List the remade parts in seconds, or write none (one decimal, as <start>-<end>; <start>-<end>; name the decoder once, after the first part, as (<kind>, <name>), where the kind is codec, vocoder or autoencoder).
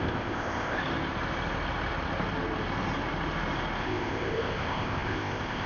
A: 0.0-0.8 (codec, ZipCodec); 3.8-5.7